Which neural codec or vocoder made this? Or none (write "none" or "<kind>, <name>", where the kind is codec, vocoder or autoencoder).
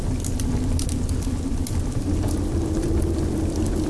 none